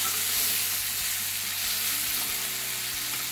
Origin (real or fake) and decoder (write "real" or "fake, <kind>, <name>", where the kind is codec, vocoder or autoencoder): real